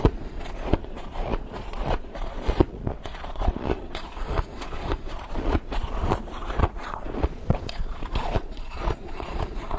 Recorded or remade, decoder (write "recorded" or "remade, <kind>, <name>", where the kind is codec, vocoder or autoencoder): remade, vocoder, Vocos